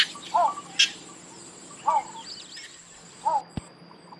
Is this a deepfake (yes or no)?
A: no